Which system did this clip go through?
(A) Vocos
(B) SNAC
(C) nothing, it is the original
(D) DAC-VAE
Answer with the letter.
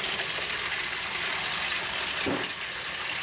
C